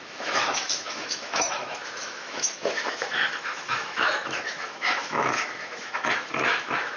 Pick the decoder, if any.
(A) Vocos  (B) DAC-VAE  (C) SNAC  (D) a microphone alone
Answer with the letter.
B